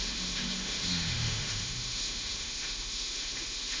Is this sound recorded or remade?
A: remade